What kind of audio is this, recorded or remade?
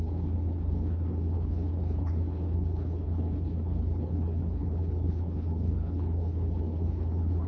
remade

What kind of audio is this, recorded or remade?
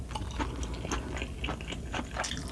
recorded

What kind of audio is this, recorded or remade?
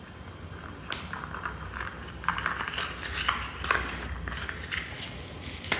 recorded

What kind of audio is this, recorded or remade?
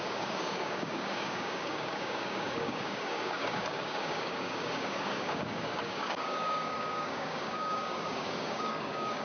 remade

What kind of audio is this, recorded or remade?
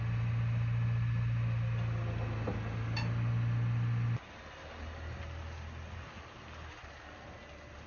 recorded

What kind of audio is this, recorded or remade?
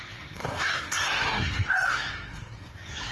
remade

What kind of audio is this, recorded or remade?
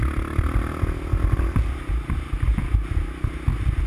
recorded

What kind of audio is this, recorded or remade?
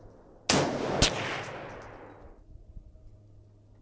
recorded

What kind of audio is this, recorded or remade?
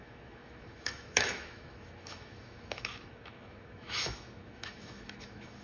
remade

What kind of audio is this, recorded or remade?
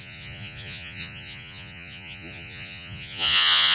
remade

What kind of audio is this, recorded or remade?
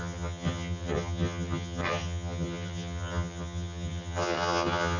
remade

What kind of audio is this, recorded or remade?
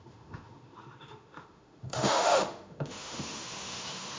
remade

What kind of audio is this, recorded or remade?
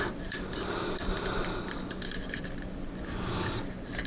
recorded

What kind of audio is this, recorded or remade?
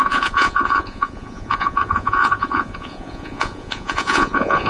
remade